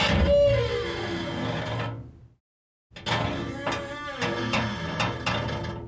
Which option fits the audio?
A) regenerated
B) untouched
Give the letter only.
B